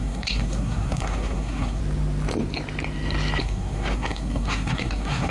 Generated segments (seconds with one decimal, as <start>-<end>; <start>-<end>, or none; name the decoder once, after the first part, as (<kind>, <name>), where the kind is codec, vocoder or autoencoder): 0.0-1.8 (codec, SNAC); 3.4-5.3